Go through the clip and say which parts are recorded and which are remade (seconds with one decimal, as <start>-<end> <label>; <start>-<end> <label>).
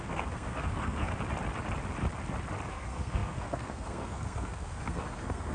0.0-1.1 remade; 1.1-2.7 recorded; 2.7-5.5 remade